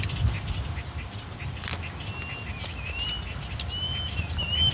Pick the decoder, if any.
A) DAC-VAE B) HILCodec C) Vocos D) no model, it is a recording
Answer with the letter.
D